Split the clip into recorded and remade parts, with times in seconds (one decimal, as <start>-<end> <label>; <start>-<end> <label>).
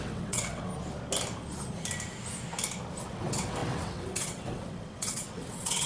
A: 0.0-0.7 remade; 0.7-3.0 recorded; 3.0-5.9 remade